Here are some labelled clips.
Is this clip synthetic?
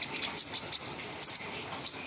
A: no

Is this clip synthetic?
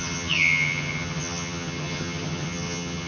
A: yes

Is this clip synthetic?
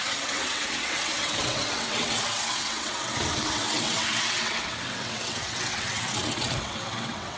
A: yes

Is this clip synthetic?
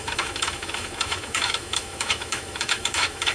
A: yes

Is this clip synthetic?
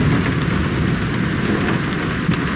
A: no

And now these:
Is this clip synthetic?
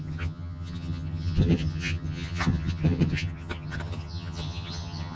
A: yes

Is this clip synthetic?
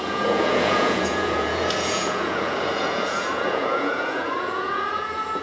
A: yes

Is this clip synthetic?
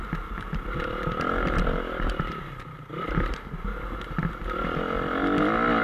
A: no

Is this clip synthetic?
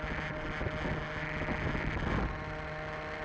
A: no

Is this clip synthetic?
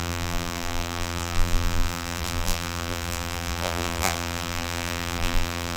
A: yes